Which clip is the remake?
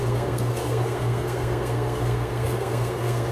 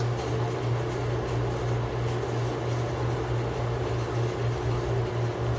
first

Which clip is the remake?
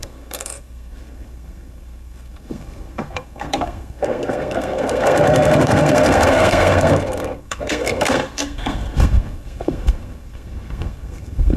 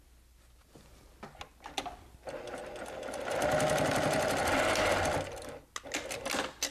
first